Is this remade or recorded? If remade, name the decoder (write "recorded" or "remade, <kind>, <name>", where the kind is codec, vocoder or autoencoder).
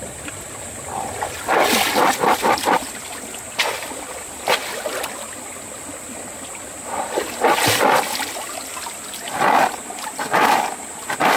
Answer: recorded